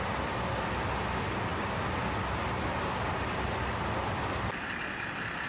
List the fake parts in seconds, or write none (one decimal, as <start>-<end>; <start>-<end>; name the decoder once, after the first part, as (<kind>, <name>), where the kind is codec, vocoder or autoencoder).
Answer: none